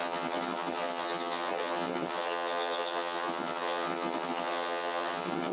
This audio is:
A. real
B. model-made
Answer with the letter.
B